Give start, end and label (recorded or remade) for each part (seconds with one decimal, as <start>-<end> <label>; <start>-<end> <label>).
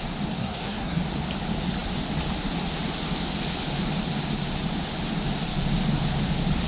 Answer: 0.0-0.4 recorded; 0.4-1.0 remade; 1.0-6.7 recorded